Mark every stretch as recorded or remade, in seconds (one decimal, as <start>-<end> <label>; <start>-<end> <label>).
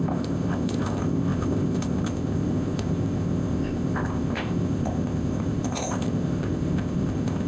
0.0-7.5 remade